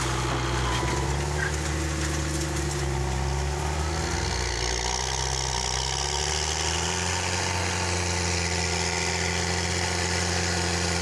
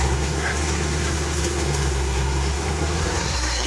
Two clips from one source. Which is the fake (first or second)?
second